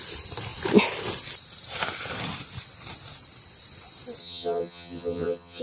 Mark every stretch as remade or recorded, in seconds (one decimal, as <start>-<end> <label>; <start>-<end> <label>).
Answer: 0.0-4.2 recorded; 4.2-5.6 remade